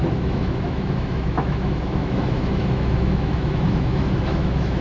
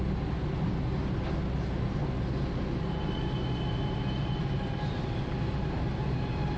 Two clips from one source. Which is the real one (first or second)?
second